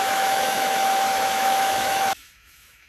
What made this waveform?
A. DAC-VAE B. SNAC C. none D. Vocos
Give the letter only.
A